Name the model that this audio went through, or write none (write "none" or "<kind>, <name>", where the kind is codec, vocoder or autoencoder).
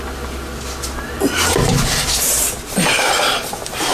none